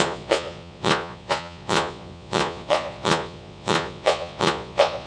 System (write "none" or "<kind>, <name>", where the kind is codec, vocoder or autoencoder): vocoder, Vocos